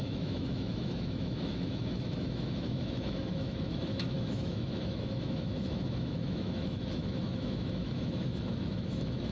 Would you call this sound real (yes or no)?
no